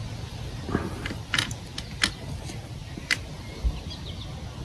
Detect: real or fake real